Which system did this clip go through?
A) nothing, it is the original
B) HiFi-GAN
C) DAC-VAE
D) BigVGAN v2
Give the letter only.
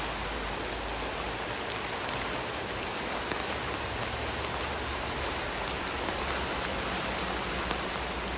A